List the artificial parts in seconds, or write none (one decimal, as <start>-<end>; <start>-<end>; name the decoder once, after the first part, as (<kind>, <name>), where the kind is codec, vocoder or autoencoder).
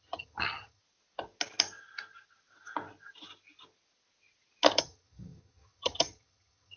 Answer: 0.0-0.8 (vocoder, HiFi-GAN); 4.8-6.8